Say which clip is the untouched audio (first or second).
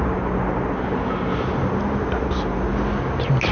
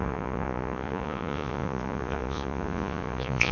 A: first